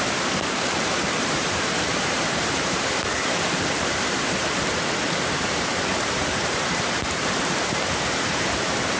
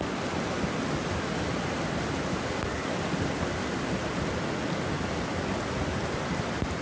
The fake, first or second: first